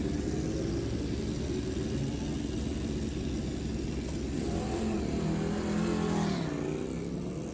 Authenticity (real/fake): real